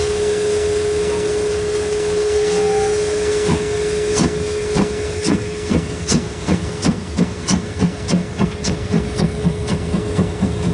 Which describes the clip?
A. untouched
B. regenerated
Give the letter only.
B